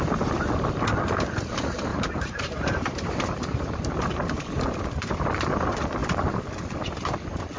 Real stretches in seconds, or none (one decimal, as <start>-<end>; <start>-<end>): 0.0-1.9; 4.8-7.6